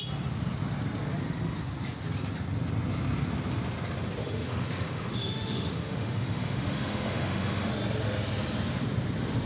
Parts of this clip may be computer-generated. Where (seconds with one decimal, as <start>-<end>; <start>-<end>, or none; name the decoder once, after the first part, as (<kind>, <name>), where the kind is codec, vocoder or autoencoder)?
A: 4.2-7.7 (autoencoder, DAC-VAE)